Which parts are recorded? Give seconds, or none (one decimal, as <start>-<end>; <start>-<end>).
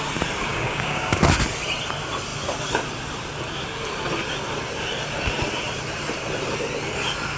0.0-0.5; 1.2-7.4